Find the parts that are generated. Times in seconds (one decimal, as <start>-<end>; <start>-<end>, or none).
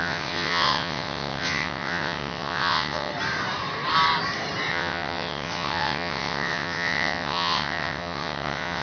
0.0-3.1; 4.7-8.8